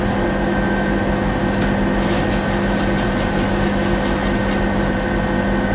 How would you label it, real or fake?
real